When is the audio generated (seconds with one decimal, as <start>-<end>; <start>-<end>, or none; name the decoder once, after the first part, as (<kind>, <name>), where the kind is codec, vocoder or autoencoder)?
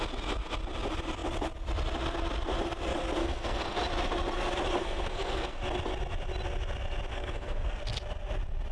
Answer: 3.2-3.8 (codec, SNAC); 4.8-5.6; 7.1-7.8